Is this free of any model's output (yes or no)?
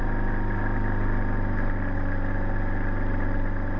yes